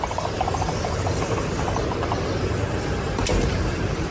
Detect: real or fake fake